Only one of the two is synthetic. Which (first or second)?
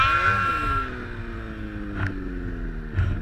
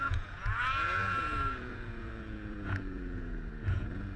second